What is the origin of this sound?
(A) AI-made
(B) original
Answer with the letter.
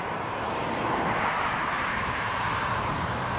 A